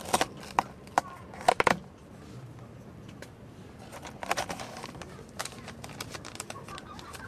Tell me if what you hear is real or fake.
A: real